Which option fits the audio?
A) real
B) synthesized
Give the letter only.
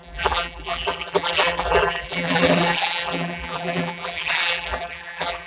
B